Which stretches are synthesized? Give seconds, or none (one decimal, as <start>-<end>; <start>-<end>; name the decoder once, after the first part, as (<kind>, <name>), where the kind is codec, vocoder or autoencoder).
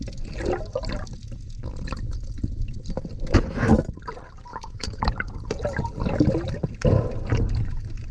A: 4.5-5.0 (autoencoder, DAC-VAE)